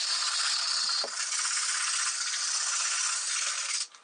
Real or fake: real